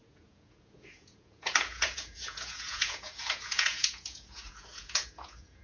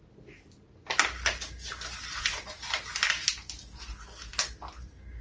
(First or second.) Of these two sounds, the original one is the second